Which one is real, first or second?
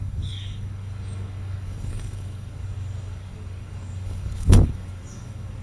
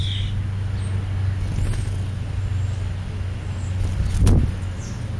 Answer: second